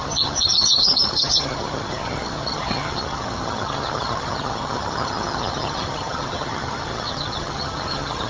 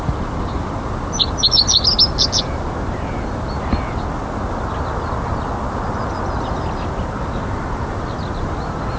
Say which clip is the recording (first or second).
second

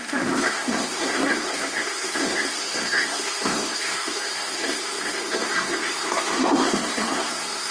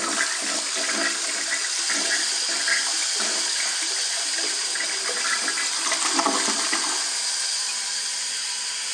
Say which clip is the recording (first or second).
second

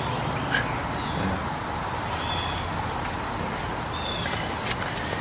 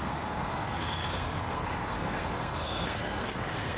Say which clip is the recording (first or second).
first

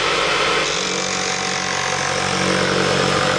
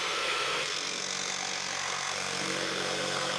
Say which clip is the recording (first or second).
first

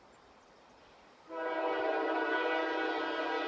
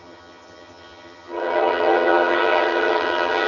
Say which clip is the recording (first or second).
first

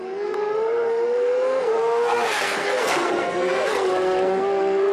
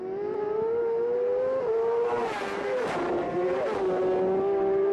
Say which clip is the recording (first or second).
second